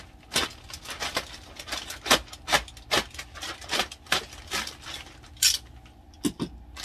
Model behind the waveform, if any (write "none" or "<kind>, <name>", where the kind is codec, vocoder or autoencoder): none